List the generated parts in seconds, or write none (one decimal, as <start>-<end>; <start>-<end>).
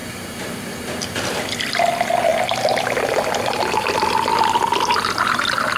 0.0-1.2